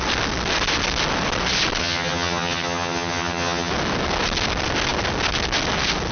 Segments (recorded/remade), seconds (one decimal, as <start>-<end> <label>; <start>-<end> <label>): 0.0-1.8 recorded; 1.8-3.7 remade; 3.7-6.1 recorded